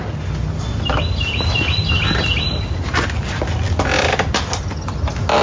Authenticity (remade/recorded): recorded